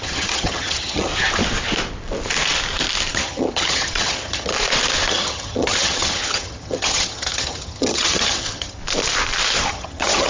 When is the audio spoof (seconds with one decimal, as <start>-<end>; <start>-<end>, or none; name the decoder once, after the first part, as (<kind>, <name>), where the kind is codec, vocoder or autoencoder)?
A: 0.0-1.1 (vocoder, HiFi-GAN); 3.1-4.5; 5.1-8.8; 9.7-10.3